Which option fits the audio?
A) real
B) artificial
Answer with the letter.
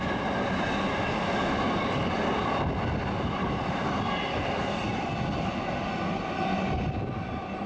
A